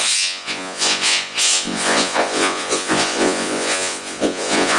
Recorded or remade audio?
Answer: remade